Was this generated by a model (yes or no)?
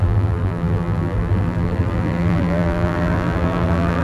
yes